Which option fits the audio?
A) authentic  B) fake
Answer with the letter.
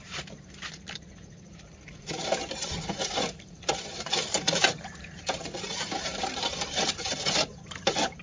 B